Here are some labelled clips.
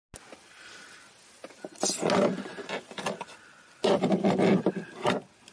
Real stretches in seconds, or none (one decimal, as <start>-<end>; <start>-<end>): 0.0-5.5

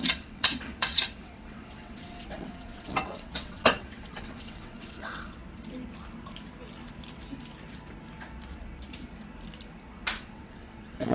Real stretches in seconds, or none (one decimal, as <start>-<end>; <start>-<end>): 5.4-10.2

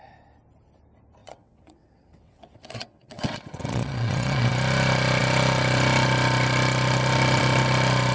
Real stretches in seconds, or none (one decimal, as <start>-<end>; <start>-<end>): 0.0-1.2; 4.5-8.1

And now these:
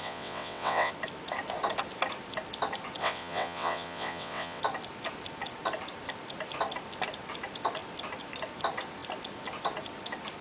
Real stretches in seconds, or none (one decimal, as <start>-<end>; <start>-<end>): 0.9-3.0; 4.6-10.4

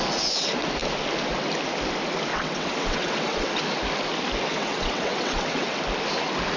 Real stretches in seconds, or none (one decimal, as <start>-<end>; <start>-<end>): 0.0-2.3; 3.6-4.5; 5.8-6.6

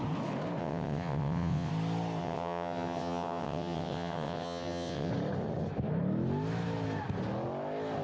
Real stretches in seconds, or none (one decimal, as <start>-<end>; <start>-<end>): 0.0-0.6; 1.7-2.2; 5.1-8.0